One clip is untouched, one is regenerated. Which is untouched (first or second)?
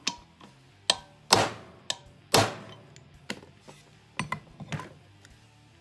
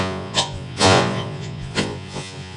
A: first